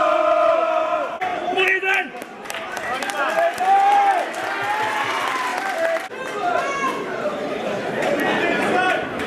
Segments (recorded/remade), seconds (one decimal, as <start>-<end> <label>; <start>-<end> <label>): 0.0-1.3 recorded; 1.3-3.0 remade; 3.0-9.3 recorded